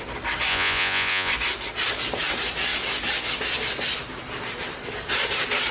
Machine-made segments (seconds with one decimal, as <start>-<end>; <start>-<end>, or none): 0.5-1.3